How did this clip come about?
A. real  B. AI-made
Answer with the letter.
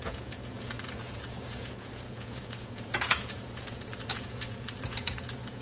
B